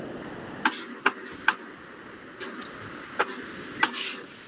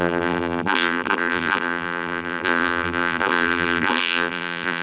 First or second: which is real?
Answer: first